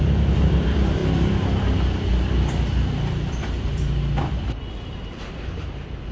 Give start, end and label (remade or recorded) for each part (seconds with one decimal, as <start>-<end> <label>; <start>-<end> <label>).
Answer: 0.0-1.0 remade; 1.0-2.1 recorded; 2.1-6.1 remade